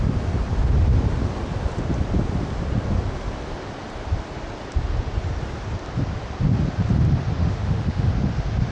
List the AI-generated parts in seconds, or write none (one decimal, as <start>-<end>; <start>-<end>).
7.4-8.1